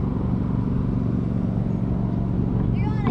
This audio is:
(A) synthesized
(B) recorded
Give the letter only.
B